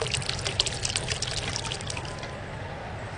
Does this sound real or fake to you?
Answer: real